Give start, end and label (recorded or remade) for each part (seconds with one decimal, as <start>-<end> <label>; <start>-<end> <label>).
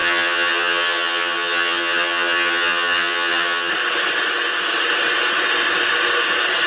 0.0-3.7 remade; 3.7-6.7 recorded